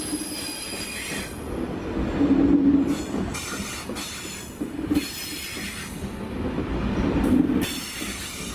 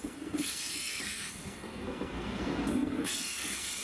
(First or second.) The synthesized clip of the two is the second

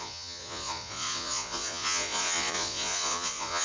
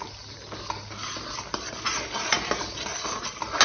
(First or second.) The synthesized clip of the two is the first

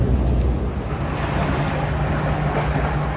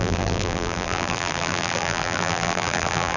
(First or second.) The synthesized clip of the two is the second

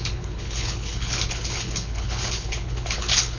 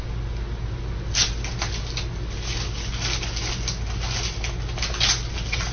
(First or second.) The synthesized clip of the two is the first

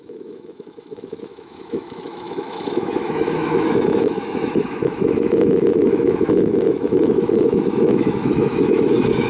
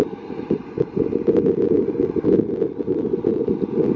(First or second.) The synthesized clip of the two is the first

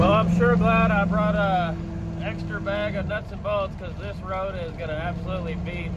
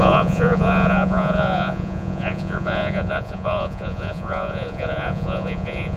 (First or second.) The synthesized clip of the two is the second